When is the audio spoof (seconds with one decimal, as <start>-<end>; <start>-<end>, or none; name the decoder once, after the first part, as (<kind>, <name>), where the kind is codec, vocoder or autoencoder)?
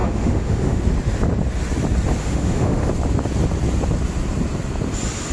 0.0-0.8 (autoencoder, DAC-VAE); 2.2-2.9